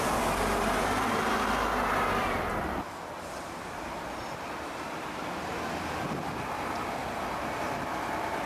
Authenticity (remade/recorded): recorded